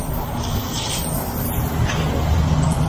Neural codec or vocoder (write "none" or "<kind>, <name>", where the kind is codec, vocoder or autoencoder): none